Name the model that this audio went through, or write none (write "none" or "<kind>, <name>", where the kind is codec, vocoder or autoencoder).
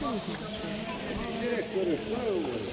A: none